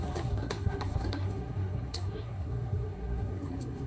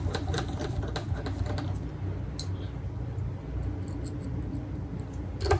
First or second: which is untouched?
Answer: second